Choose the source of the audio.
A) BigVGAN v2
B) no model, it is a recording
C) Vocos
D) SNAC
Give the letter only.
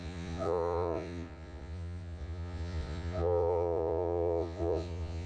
C